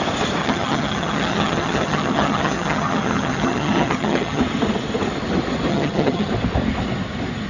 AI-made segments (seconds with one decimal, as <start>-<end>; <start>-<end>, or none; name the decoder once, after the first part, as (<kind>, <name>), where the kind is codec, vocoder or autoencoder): 0.4-4.4 (vocoder, HiFi-GAN); 5.7-6.3